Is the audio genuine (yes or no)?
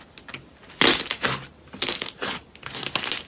yes